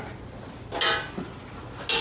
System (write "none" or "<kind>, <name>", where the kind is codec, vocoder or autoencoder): none